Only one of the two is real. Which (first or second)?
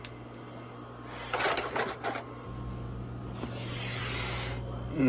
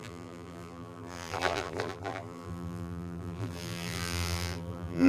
first